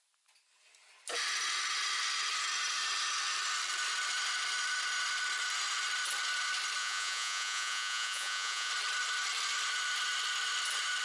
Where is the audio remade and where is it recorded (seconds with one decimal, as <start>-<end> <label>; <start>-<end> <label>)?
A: 0.0-6.8 recorded; 6.8-8.7 remade; 8.7-11.0 recorded